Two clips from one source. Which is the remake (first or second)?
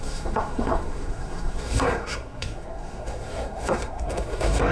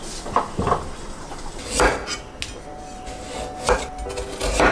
first